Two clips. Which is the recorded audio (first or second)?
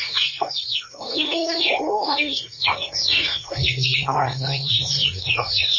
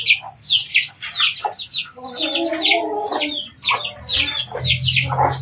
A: second